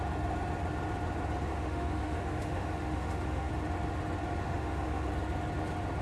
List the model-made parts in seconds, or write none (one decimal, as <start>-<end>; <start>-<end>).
1.5-3.5; 4.4-5.1